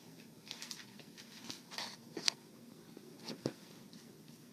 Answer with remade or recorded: remade